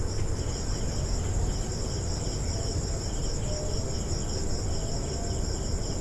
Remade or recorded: recorded